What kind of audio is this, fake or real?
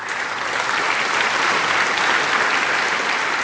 real